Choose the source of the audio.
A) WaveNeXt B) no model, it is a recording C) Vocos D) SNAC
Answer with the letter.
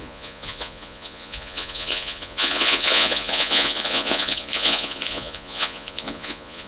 C